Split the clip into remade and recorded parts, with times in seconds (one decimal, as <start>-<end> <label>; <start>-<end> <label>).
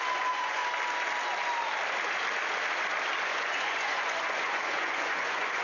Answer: 0.0-0.6 remade; 0.6-3.2 recorded; 3.2-5.6 remade